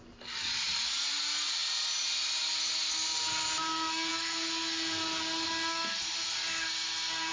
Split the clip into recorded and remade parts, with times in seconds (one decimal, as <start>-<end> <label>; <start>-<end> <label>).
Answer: 0.0-7.3 recorded